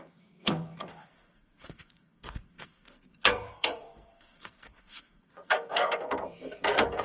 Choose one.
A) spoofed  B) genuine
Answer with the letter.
A